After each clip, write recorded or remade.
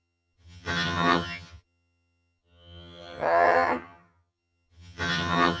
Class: remade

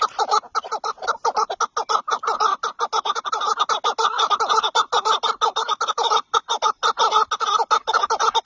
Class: recorded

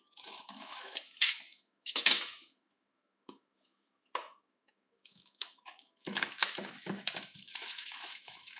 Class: remade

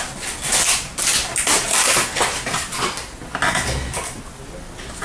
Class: recorded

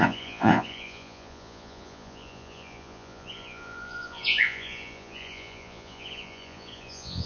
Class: remade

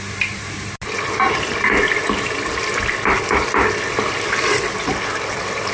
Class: recorded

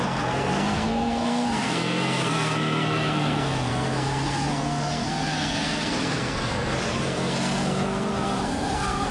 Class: remade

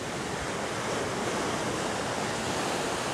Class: recorded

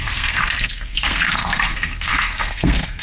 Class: remade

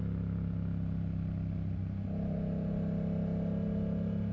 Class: recorded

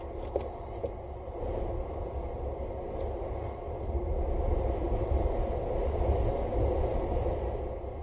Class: recorded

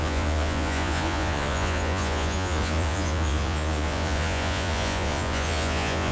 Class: remade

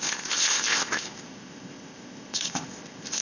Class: remade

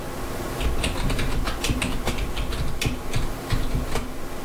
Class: recorded